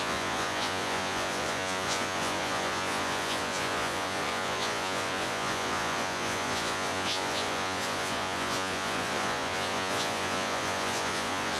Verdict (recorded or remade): remade